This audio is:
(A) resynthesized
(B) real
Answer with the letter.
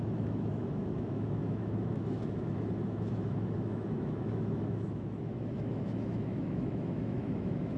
A